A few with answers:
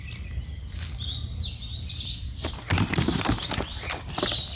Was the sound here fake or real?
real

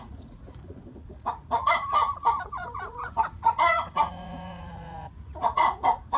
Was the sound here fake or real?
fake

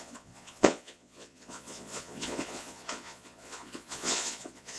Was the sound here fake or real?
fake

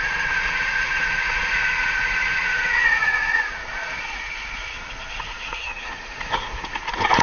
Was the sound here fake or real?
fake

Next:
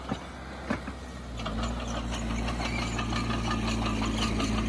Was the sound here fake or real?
real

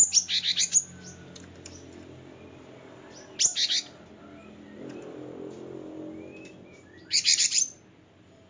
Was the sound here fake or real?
real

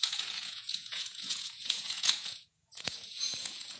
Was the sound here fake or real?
fake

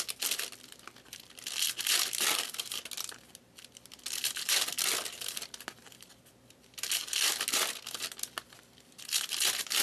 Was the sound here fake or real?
real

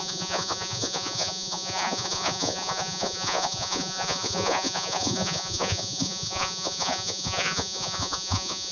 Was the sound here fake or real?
fake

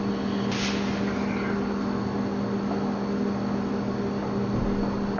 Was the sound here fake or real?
real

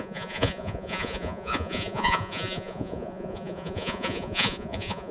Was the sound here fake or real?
fake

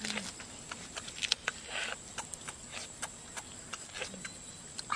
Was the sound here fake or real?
real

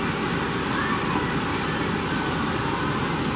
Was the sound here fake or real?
real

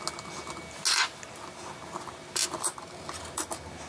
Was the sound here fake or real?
real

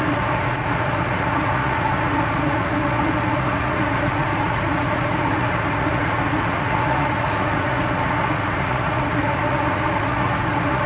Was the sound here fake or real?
fake